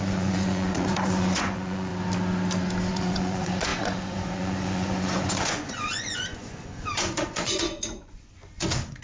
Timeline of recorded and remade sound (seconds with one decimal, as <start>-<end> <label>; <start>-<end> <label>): 0.0-1.9 remade; 1.9-2.9 recorded; 2.9-9.0 remade